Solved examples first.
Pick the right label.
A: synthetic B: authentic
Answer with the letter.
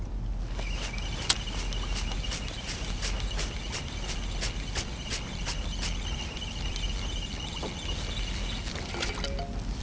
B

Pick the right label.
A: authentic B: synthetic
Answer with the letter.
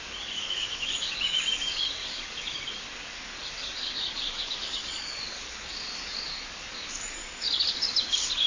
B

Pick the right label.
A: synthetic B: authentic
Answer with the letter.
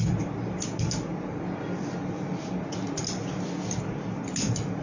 B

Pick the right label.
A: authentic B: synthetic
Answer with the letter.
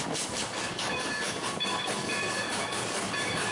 B